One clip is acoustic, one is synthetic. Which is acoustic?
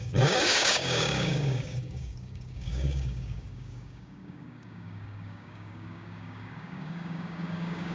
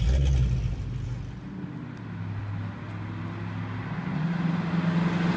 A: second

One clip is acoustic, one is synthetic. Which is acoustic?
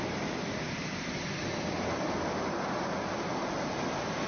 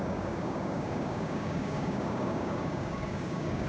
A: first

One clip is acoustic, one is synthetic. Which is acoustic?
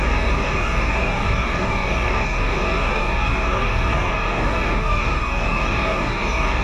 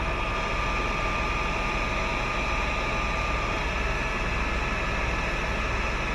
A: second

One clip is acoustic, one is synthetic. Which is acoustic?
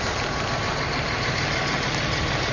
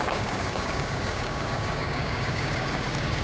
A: first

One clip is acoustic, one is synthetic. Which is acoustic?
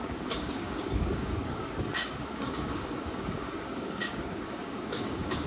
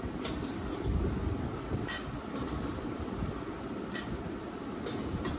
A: second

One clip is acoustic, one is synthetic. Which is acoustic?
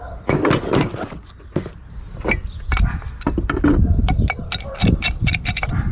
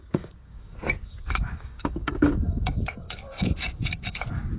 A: first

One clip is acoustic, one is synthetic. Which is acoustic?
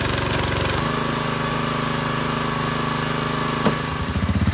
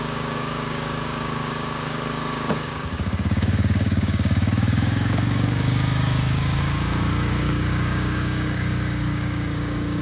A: first